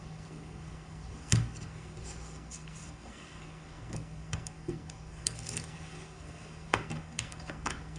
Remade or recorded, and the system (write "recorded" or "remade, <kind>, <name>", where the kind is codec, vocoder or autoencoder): remade, codec, SNAC